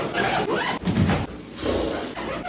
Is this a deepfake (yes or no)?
no